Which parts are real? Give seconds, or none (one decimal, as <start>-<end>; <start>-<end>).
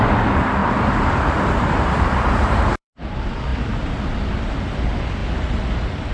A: 5.2-6.1